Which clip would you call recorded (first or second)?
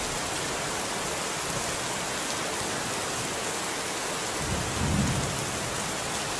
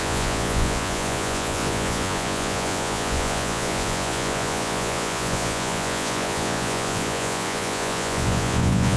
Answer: first